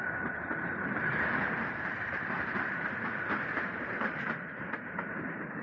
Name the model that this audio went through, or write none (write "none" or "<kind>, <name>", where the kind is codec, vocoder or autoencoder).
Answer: vocoder, BigVGAN v2